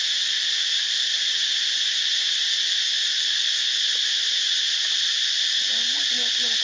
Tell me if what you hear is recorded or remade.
recorded